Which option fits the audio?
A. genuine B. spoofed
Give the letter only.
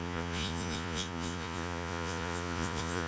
B